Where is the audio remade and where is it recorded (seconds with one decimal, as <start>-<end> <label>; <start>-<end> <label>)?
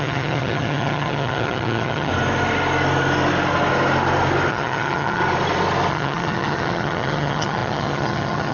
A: 0.0-2.1 remade; 2.1-4.5 recorded; 4.5-5.2 remade; 5.2-5.9 recorded; 5.9-8.5 remade